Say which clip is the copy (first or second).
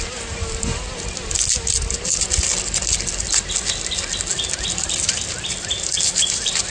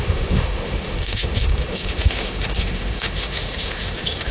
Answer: second